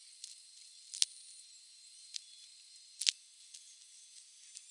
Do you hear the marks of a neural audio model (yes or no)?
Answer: no